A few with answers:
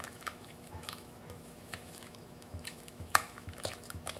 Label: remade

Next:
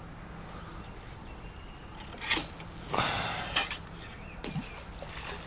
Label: recorded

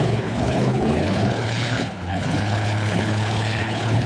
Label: remade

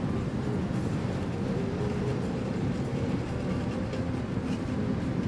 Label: recorded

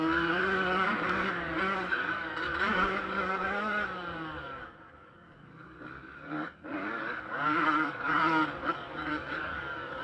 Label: remade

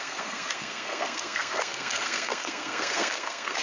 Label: remade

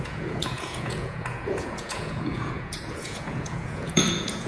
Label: remade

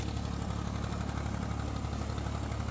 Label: recorded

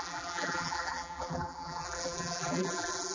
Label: remade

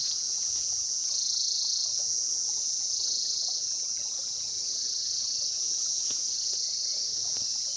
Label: remade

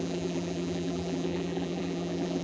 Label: remade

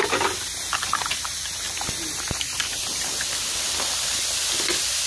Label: recorded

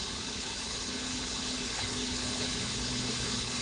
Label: remade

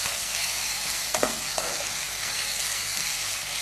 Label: remade